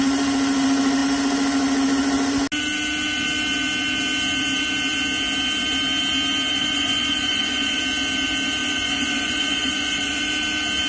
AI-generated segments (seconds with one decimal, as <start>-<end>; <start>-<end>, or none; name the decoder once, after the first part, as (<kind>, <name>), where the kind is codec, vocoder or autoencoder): 6.5-7.8 (vocoder, Vocos); 8.6-10.3